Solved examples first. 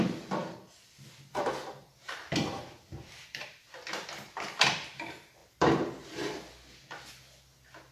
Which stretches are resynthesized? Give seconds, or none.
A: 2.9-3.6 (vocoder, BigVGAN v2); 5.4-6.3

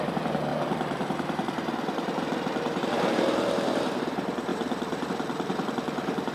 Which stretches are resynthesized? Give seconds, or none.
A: 0.0-6.3 (vocoder, BigVGAN v2)